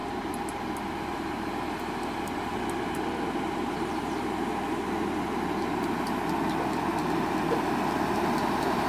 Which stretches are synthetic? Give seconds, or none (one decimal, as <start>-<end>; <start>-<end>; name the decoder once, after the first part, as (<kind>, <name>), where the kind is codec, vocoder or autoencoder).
none